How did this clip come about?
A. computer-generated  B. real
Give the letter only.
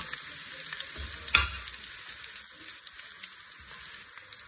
B